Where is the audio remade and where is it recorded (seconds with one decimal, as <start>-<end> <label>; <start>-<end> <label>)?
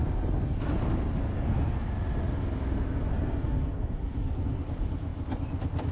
0.0-1.2 recorded; 1.2-1.9 remade; 1.9-3.1 recorded; 3.1-4.6 remade; 4.6-5.9 recorded